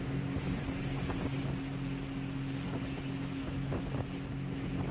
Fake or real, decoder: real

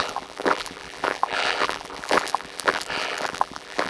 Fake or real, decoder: fake, vocoder, BigVGAN v2